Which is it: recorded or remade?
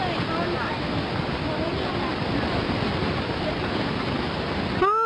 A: recorded